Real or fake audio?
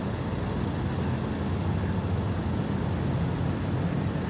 real